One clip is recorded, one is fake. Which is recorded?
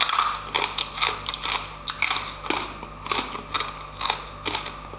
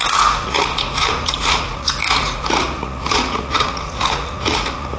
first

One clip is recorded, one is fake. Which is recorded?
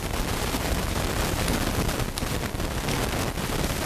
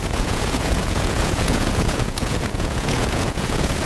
first